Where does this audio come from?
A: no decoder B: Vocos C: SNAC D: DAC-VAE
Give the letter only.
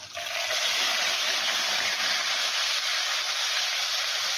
A